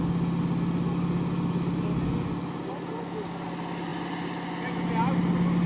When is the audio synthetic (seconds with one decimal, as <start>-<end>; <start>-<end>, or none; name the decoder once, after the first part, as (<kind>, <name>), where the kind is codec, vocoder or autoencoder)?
none